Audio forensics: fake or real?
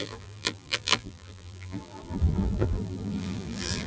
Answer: fake